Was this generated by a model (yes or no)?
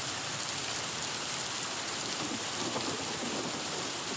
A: yes